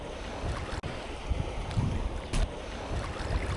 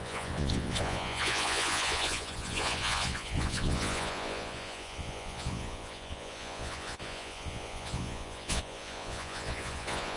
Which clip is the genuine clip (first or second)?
first